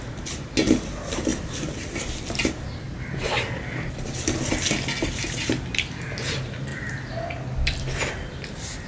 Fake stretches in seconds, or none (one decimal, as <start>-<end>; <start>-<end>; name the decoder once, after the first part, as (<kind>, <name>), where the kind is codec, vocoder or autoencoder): none